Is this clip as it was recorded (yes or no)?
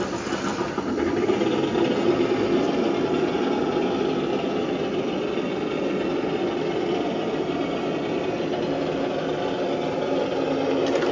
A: yes